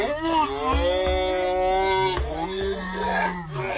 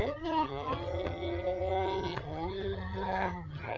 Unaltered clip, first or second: first